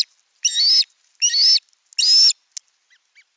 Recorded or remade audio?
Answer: recorded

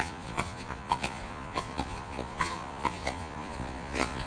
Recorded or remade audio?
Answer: remade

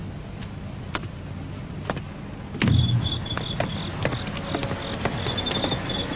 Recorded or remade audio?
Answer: recorded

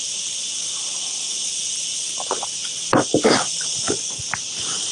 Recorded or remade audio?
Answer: recorded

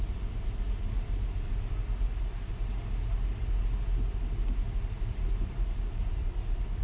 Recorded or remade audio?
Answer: recorded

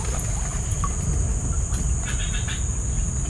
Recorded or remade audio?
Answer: recorded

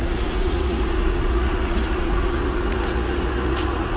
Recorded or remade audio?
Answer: remade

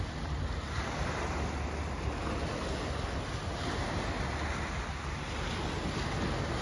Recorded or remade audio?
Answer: recorded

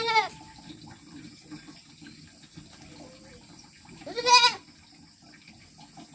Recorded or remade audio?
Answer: recorded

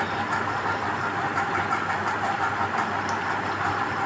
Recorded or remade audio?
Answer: recorded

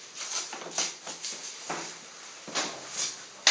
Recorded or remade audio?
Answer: recorded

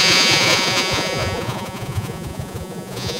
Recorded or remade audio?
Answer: remade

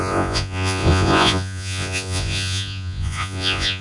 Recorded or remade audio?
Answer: remade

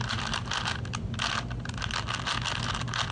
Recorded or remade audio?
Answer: recorded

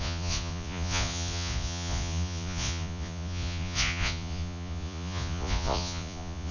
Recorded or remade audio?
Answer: remade